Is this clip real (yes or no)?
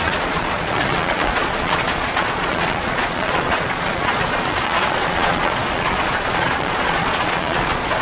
no